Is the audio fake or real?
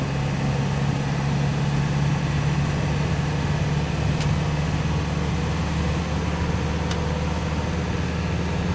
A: real